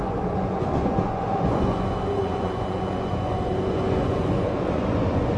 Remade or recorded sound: remade